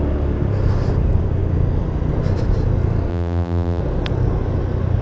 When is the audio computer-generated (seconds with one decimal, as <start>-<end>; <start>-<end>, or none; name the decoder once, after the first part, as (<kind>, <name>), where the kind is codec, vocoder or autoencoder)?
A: 3.1-3.8 (vocoder, BigVGAN v2)